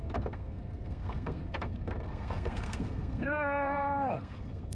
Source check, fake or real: fake